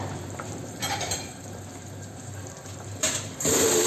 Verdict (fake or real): fake